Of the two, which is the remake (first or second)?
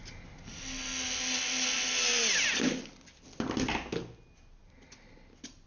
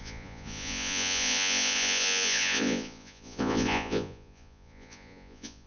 second